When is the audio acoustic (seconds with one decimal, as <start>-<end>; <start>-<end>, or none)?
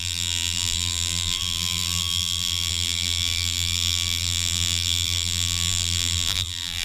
none